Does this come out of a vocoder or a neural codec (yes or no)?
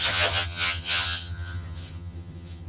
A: yes